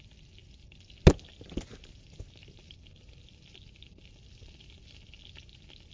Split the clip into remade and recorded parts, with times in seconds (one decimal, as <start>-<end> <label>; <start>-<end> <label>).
0.0-5.9 recorded